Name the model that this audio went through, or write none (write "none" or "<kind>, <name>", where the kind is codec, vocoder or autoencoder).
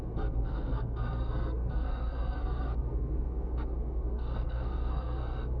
codec, SNAC